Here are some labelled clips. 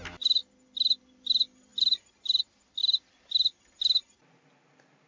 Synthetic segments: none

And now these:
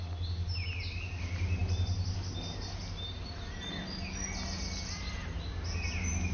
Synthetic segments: none

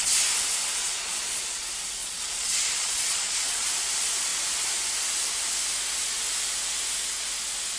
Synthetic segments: 0.8-1.6 (vocoder, Vocos); 2.0-3.7

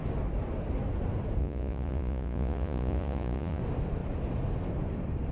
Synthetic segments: 1.4-3.6 (vocoder, Vocos)